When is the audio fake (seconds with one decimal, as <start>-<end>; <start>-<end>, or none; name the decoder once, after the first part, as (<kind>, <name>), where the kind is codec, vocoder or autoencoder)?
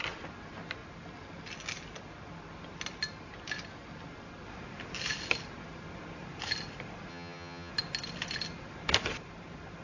7.1-7.7 (vocoder, HiFi-GAN)